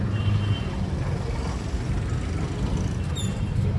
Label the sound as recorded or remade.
recorded